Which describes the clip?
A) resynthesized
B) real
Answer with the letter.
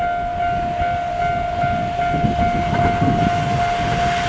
B